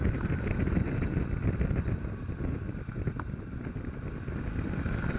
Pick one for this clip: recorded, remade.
recorded